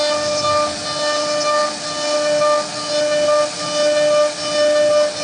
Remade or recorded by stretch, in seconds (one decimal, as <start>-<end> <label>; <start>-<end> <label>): 0.0-5.2 recorded